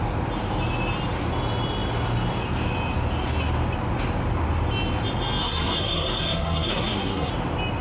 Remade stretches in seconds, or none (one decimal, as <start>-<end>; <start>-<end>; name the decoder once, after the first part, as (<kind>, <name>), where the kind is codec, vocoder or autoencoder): 5.4-7.3 (codec, SNAC)